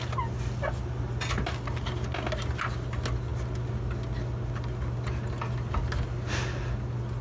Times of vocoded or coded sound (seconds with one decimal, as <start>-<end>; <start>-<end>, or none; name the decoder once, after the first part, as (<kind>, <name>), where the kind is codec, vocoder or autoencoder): none